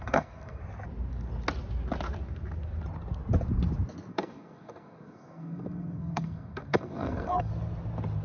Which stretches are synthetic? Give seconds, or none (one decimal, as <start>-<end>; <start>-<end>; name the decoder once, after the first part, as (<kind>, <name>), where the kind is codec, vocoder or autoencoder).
0.0-0.6 (codec, SNAC); 4.1-7.5